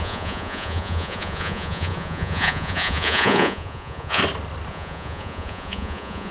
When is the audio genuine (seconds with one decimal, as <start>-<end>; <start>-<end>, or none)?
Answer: 4.2-4.7